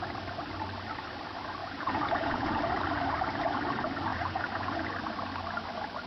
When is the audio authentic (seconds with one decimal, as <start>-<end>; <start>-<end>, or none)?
0.0-1.6; 2.6-4.1; 4.9-6.1